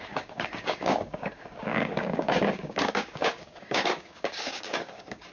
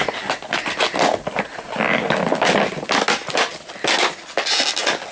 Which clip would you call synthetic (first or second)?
first